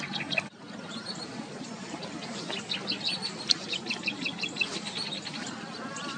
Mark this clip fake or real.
real